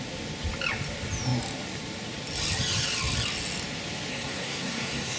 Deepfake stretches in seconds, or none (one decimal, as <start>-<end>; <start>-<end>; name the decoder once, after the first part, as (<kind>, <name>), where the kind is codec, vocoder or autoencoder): 4.1-5.2 (codec, SNAC)